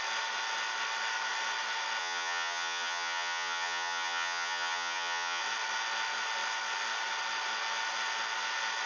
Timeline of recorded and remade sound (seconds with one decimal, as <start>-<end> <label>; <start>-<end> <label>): 0.0-2.0 recorded; 2.0-5.4 remade; 5.4-8.9 recorded